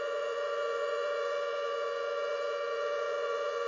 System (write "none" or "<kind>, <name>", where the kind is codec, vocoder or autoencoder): vocoder, Vocos